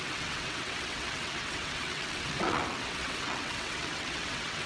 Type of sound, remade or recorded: remade